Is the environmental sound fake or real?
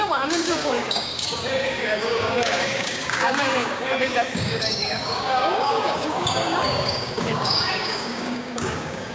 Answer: fake